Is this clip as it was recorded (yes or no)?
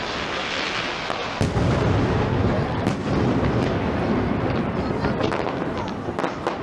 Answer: yes